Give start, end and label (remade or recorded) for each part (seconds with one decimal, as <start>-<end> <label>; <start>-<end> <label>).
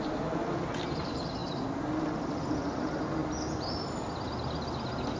0.0-5.2 recorded